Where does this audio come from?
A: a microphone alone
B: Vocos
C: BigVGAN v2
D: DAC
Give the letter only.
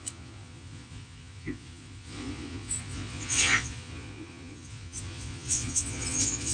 B